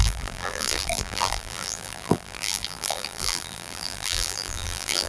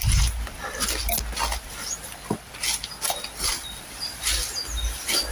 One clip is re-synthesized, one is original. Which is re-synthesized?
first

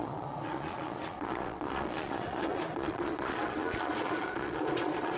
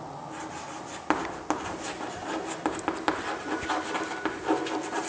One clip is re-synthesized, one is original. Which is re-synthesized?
first